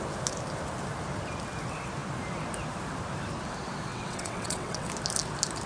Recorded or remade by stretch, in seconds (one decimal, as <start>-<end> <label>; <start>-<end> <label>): 0.0-3.9 recorded; 3.9-4.9 remade; 4.9-5.7 recorded